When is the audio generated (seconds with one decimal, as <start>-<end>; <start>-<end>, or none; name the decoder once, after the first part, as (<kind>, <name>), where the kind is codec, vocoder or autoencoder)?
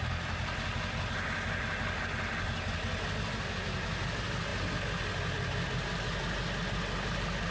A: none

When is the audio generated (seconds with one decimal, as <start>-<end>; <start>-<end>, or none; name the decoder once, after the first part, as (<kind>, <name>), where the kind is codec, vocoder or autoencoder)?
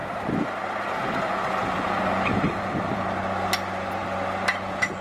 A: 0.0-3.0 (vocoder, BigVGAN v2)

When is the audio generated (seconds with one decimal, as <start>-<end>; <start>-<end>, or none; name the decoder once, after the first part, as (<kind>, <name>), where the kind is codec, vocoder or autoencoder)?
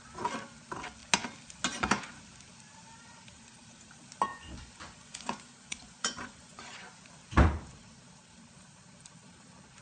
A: 4.3-7.0 (vocoder, Vocos)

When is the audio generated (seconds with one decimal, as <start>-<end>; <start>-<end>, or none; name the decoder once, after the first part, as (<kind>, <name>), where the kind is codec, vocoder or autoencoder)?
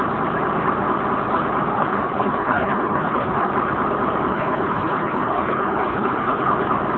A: 1.7-3.5 (codec, HILCodec); 4.3-6.5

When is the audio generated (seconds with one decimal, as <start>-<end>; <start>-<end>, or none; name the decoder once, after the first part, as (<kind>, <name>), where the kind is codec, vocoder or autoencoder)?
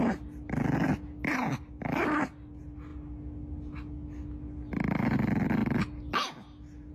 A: none